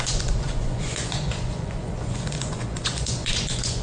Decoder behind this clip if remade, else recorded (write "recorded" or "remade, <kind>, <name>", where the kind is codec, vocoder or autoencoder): remade, vocoder, Vocos